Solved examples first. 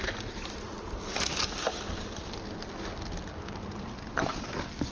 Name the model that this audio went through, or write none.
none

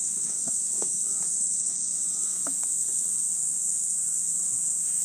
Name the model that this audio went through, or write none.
codec, SNAC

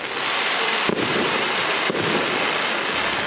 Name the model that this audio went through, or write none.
vocoder, BigVGAN v2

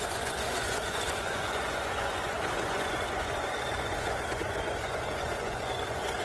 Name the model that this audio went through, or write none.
vocoder, Vocos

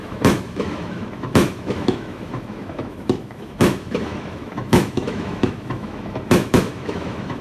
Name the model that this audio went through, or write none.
autoencoder, DAC-VAE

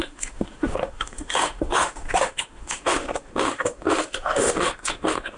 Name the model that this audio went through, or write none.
autoencoder, DAC-VAE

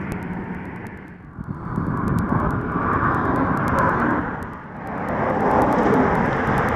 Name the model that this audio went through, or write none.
none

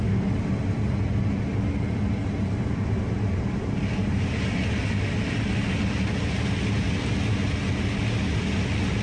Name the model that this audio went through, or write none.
none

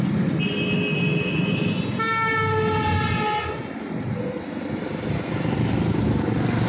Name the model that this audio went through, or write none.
none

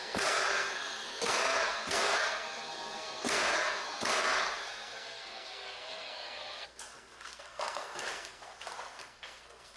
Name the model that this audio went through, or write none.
codec, SNAC